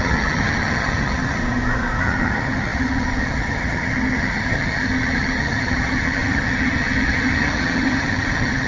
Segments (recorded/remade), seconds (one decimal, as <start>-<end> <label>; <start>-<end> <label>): 0.0-1.4 remade; 1.4-2.0 recorded; 2.0-8.7 remade